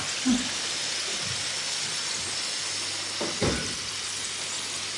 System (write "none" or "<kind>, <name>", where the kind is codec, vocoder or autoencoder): none